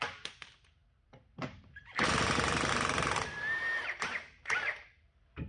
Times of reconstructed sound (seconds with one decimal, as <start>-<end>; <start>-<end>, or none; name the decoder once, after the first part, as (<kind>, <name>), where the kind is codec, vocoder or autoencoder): 0.0-5.5 (vocoder, BigVGAN v2)